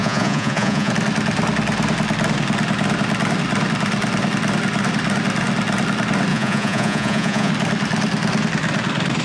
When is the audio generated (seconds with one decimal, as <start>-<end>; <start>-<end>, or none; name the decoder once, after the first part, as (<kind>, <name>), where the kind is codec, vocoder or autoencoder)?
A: 0.0-0.9 (vocoder, Vocos); 6.3-7.5